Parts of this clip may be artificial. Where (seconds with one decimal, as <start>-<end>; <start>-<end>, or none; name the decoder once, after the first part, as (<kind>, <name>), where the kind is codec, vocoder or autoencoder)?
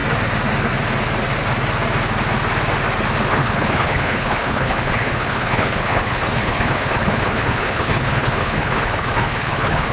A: 3.3-9.9 (codec, HILCodec)